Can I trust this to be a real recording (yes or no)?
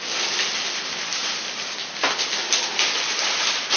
yes